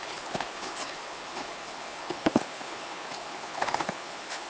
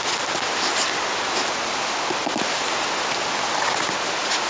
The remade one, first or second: first